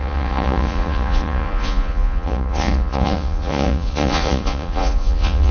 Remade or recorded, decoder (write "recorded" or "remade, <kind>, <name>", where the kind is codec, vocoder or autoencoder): remade, vocoder, Vocos